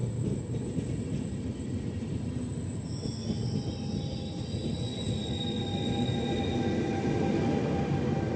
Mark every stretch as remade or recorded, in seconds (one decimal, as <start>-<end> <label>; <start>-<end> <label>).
0.0-2.7 remade; 2.7-8.4 recorded

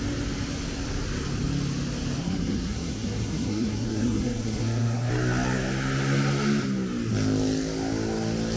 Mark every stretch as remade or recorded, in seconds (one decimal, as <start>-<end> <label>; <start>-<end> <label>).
0.0-2.2 recorded; 2.2-5.1 remade; 5.1-8.6 recorded